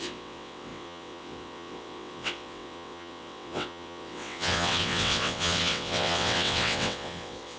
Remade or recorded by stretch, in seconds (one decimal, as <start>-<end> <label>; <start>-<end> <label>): 0.0-7.6 remade